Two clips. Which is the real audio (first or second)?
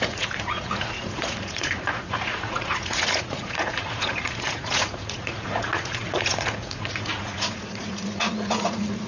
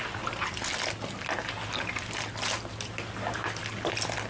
second